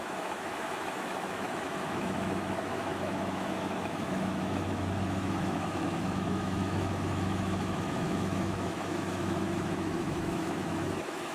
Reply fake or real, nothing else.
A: fake